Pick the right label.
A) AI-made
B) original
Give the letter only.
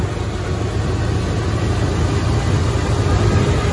B